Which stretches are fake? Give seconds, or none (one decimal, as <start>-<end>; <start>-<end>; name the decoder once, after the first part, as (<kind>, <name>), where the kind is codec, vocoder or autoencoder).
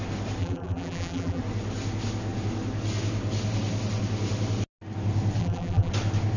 0.4-1.4 (vocoder, BigVGAN v2); 5.4-5.9